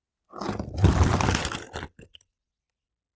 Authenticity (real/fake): real